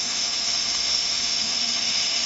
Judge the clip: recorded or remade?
remade